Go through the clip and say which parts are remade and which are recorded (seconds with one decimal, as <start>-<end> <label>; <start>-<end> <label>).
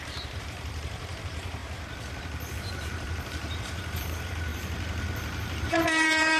0.0-1.6 remade; 1.6-2.6 recorded; 2.6-4.5 remade; 4.5-5.6 recorded; 5.6-6.4 remade